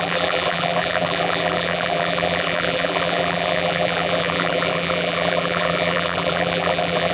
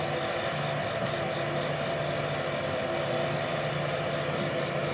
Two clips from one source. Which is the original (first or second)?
second